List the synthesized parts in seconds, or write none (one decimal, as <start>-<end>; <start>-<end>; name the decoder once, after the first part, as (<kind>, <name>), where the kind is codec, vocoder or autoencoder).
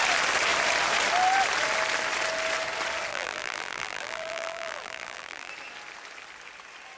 3.1-5.5 (vocoder, BigVGAN v2)